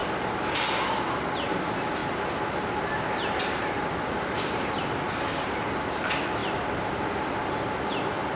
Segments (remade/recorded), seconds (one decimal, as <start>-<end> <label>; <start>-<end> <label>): 0.0-8.4 recorded